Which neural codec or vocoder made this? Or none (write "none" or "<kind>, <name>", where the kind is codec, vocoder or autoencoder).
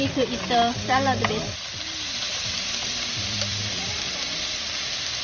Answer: vocoder, BigVGAN v2